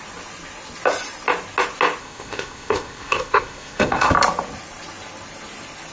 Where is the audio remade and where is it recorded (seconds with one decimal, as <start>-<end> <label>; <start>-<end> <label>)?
0.0-2.0 recorded; 2.0-4.1 remade; 4.1-5.9 recorded